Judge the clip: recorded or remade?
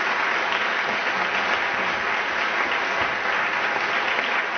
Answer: recorded